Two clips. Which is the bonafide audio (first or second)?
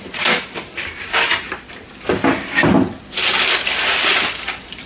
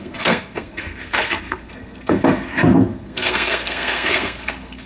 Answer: first